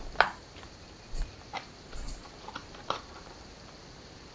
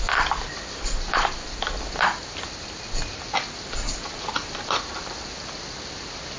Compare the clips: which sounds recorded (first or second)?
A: second